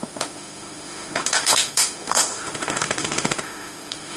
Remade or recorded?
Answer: remade